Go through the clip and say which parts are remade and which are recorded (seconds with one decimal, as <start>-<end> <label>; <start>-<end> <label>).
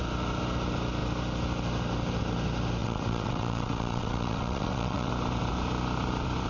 0.0-2.8 recorded; 2.8-5.1 remade; 5.1-6.5 recorded